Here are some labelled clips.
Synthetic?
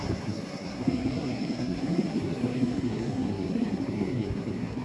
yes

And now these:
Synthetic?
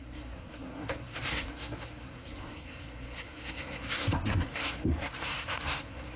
yes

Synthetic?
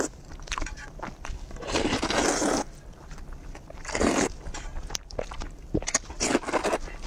no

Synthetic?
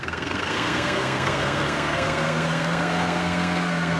yes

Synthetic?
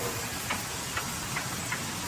no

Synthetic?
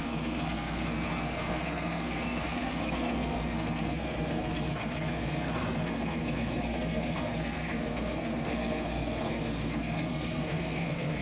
yes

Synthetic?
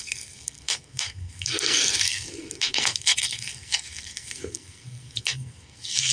yes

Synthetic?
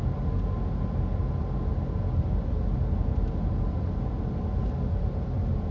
no